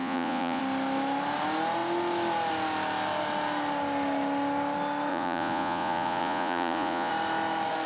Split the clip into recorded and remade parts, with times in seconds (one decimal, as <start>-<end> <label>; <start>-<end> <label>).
0.0-0.6 remade; 0.6-5.1 recorded; 5.1-7.1 remade; 7.1-7.9 recorded

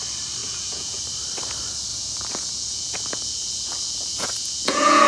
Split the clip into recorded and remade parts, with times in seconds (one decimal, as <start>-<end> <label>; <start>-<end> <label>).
0.0-0.4 recorded; 0.4-1.0 remade; 1.0-1.9 recorded; 1.9-5.1 remade

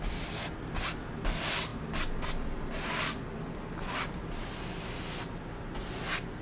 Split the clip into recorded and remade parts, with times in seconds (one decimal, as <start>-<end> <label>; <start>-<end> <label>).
0.0-6.4 recorded

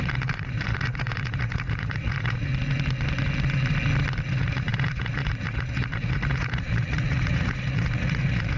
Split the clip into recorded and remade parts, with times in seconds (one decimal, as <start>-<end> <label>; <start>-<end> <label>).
0.0-2.5 remade; 2.5-4.3 recorded; 4.3-8.6 remade

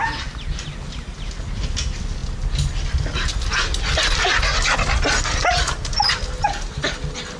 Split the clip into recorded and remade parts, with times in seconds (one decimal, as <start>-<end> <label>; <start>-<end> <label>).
0.0-7.4 recorded

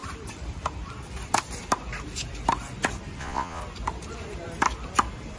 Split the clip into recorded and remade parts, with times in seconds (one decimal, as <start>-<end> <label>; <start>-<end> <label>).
0.0-3.2 recorded; 3.2-3.6 remade; 3.6-5.4 recorded

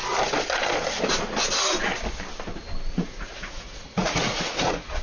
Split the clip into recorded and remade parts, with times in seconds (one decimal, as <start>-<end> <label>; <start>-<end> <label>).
0.0-2.9 recorded; 2.9-5.0 remade